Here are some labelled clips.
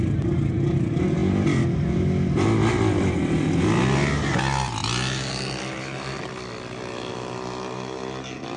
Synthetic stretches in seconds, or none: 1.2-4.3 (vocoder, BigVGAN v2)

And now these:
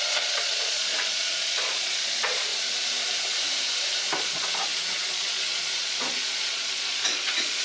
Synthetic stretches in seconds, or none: 0.0-2.5 (vocoder, Vocos); 4.2-7.6